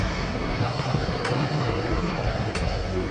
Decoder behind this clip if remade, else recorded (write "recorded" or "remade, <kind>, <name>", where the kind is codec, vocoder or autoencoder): remade, codec, SNAC